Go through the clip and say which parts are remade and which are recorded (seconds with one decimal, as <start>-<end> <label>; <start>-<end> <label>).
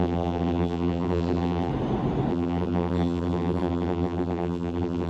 0.0-1.7 remade; 1.7-2.3 recorded; 2.3-5.1 remade